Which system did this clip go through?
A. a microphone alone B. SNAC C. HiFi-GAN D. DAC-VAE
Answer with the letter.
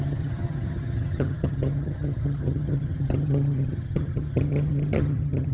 C